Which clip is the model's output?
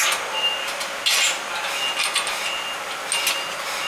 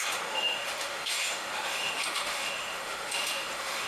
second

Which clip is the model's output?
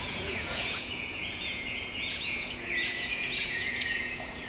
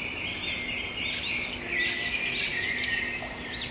first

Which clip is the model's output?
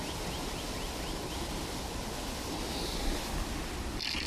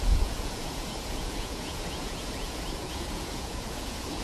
second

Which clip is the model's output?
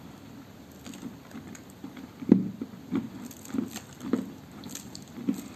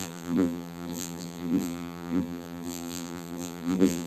second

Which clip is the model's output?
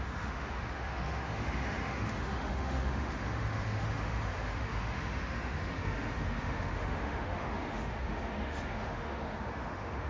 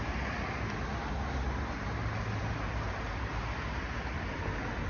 first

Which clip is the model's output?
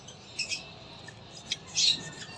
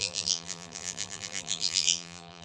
second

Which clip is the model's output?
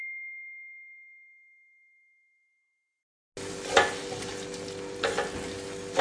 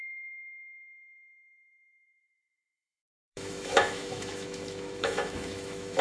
second